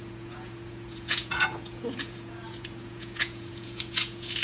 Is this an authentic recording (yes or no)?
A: no